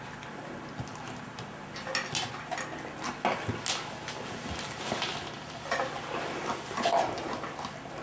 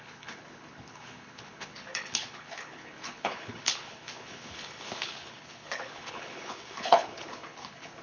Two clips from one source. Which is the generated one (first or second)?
second